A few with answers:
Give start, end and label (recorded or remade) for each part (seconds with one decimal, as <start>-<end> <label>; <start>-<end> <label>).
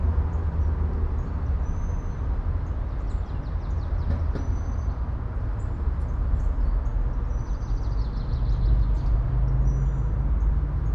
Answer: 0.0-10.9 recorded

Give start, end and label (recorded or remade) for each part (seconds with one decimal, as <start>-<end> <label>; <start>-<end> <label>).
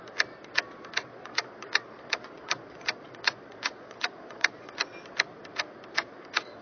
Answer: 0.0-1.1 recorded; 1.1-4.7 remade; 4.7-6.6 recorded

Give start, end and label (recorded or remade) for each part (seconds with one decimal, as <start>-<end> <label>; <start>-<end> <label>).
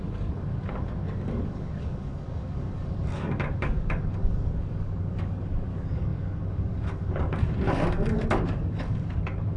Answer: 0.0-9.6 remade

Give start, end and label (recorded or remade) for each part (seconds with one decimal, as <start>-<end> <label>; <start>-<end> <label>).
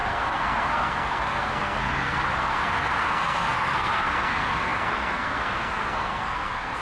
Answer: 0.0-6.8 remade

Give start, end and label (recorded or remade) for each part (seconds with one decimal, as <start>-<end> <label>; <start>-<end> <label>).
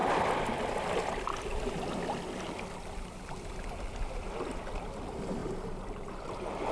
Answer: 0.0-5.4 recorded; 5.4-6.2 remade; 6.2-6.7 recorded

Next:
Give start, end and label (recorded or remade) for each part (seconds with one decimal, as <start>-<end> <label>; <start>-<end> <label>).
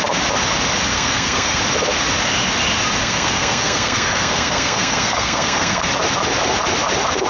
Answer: 0.0-0.9 recorded; 0.9-1.6 remade; 1.6-3.0 recorded; 3.0-5.9 remade; 5.9-7.3 recorded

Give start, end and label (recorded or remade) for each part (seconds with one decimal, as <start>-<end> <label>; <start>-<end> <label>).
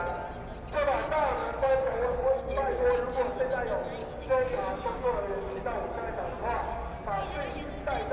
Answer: 0.0-1.4 recorded; 1.4-2.8 remade; 2.8-4.0 recorded; 4.0-5.6 remade; 5.6-6.4 recorded; 6.4-7.2 remade; 7.2-8.1 recorded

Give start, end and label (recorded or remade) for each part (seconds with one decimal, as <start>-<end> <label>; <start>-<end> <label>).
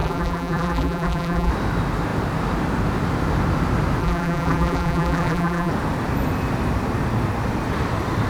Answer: 0.0-1.5 remade; 1.5-4.0 recorded; 4.0-5.7 remade; 5.7-8.3 recorded